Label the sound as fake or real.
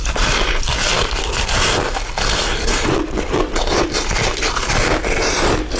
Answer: real